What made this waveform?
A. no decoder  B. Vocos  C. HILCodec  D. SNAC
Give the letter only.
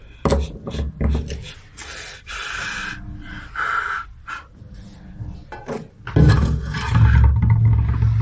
A